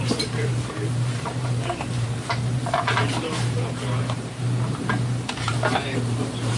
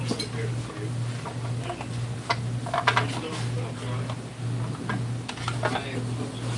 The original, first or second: second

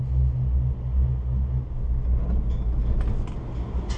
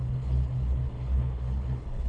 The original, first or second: first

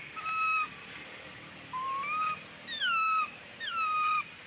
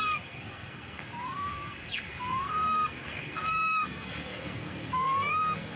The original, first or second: first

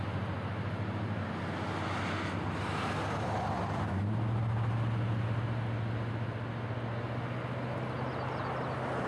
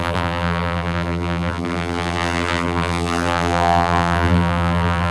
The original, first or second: first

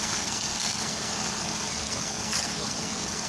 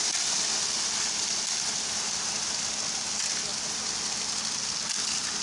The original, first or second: second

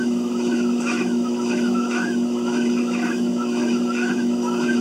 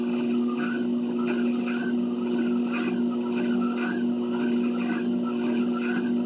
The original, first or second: second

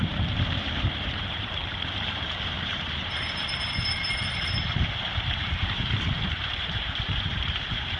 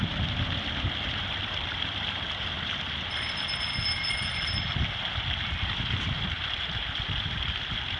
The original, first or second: second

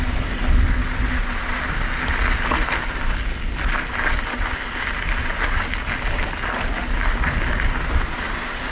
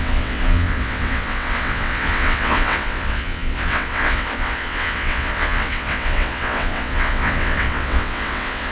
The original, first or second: first